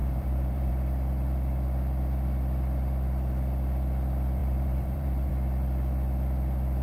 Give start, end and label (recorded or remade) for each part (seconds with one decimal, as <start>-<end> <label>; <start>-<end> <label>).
0.0-0.7 remade; 0.7-4.4 recorded; 4.4-5.3 remade; 5.3-6.8 recorded